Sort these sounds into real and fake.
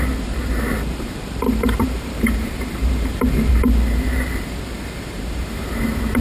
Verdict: fake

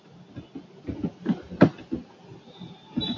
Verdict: real